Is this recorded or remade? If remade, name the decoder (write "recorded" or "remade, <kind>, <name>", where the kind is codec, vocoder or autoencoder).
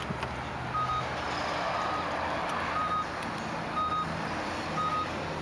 recorded